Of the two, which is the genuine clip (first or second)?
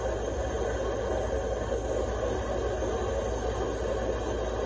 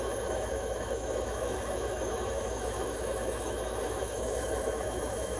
first